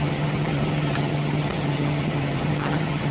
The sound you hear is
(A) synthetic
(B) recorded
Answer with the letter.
A